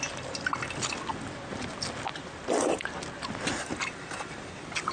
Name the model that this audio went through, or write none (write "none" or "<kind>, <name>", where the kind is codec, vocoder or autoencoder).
none